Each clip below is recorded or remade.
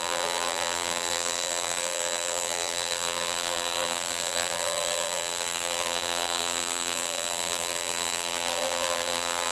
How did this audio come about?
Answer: remade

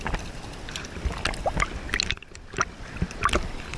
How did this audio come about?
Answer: recorded